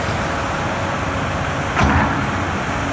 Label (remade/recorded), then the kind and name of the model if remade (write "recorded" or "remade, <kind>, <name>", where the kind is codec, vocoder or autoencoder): recorded